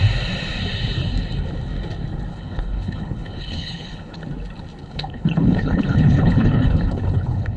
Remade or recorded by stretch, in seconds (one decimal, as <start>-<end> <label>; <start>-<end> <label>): 0.0-2.3 recorded; 2.3-4.2 remade; 4.2-4.8 recorded; 4.8-7.6 remade